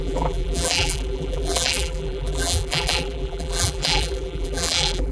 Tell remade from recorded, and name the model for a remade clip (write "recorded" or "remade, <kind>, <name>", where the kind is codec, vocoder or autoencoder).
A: remade, vocoder, BigVGAN v2